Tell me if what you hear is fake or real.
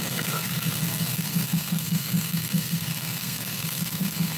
fake